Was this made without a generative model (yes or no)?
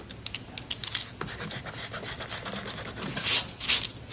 yes